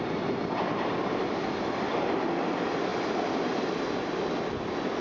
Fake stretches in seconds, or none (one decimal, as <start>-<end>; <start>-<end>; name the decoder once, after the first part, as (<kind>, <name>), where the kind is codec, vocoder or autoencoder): none